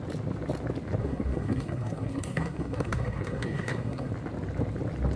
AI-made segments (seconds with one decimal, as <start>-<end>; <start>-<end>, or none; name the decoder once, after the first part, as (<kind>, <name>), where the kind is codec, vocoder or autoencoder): 1.0-4.1 (codec, SNAC)